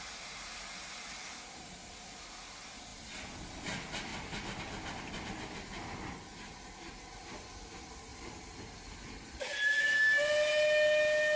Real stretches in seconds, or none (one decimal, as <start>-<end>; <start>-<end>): 0.0-4.1; 4.6-8.1; 10.0-11.4